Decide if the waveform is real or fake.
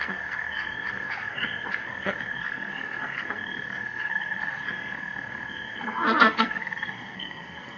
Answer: fake